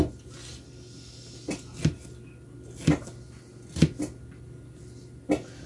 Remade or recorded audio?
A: recorded